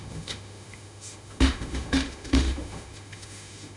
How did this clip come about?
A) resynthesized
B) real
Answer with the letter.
A